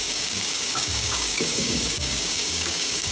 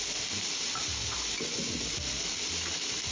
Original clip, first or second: second